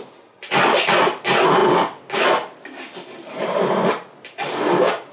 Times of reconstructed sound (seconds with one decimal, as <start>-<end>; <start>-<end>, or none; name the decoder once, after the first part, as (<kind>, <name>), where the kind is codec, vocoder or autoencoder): none